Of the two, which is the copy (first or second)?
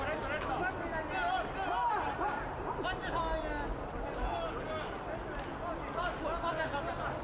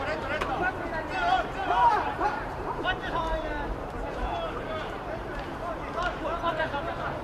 second